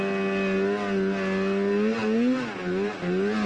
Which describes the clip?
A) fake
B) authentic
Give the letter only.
B